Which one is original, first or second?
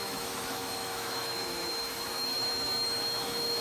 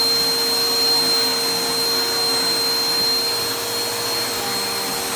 second